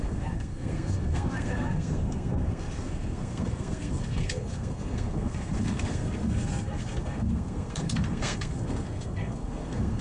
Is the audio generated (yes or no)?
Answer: yes